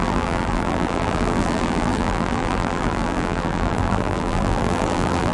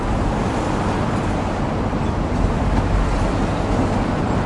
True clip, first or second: second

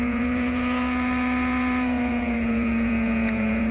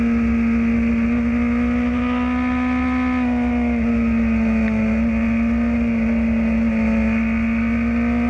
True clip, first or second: second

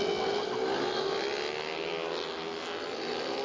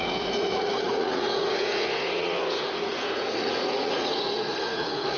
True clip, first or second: first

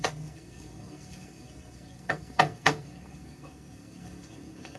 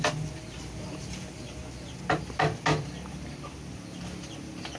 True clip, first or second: second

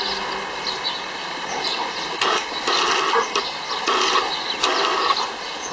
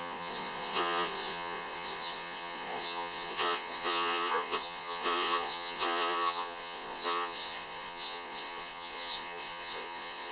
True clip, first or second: first